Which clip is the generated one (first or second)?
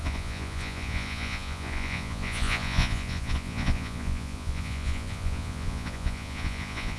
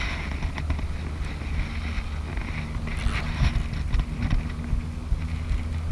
first